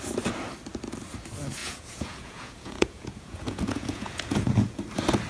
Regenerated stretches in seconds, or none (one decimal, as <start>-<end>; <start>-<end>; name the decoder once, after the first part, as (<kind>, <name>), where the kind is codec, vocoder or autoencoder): 1.6-4.8 (vocoder, Vocos)